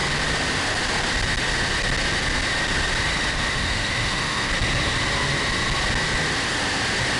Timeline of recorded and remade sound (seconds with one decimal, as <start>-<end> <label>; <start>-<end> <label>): 0.0-3.3 recorded; 3.3-4.5 remade; 4.5-7.2 recorded